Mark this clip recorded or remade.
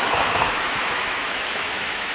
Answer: remade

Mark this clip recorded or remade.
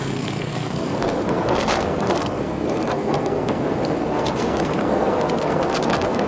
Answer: remade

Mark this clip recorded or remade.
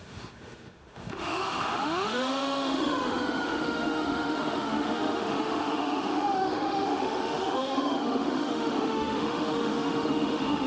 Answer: remade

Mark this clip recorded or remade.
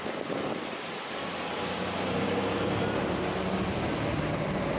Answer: recorded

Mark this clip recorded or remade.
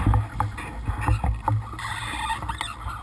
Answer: recorded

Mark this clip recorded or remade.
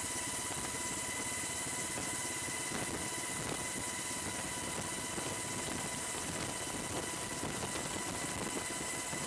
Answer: recorded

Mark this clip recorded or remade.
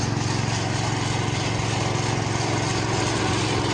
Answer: recorded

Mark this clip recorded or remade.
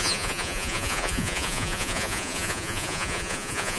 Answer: remade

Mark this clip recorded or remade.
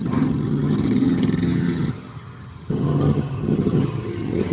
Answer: remade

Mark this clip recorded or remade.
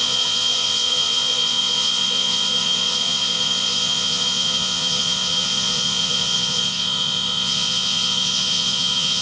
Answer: remade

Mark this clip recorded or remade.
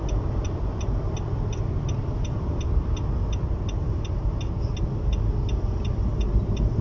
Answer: recorded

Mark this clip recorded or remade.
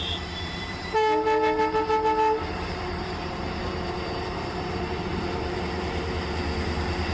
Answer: remade